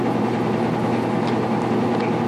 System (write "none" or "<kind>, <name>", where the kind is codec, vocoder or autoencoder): none